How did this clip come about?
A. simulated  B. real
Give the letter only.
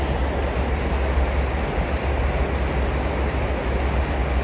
B